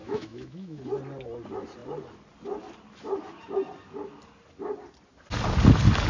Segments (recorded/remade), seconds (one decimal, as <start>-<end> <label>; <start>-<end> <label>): 0.0-0.8 remade; 0.8-6.1 recorded